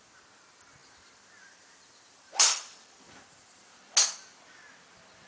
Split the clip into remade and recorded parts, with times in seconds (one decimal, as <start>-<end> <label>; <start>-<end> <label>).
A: 0.0-0.8 recorded; 0.8-3.1 remade; 3.1-5.3 recorded